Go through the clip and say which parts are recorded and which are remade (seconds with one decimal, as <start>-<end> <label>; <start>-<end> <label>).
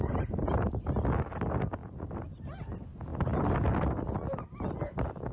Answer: 0.0-0.8 remade; 0.8-1.8 recorded; 1.8-2.7 remade; 2.7-5.3 recorded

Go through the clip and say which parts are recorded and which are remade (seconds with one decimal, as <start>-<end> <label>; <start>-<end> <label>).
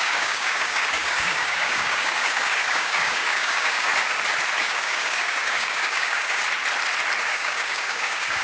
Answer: 0.0-3.9 remade; 3.9-4.6 recorded; 4.6-6.4 remade; 6.4-7.2 recorded; 7.2-8.4 remade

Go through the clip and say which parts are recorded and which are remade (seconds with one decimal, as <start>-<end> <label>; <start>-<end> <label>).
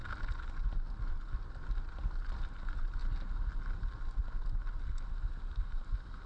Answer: 0.0-1.1 recorded; 1.1-3.0 remade; 3.0-5.3 recorded; 5.3-6.3 remade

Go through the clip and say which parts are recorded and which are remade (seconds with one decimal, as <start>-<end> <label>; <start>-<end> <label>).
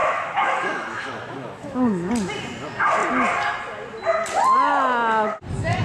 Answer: 0.0-2.1 remade; 2.1-5.8 recorded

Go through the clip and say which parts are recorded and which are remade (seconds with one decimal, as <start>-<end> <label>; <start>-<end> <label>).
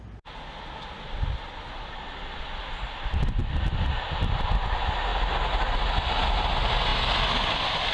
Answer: 0.0-7.9 recorded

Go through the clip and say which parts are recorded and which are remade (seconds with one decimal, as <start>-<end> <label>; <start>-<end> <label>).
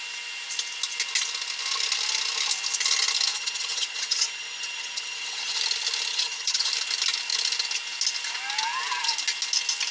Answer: 0.0-3.3 recorded; 3.3-5.6 remade; 5.6-6.1 recorded; 6.1-6.7 remade; 6.7-9.9 recorded